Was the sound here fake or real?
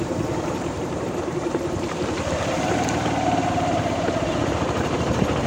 fake